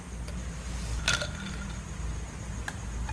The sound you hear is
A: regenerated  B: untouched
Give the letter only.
B